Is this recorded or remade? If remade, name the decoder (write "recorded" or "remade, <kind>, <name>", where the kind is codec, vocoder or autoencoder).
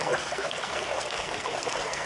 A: remade, codec, SNAC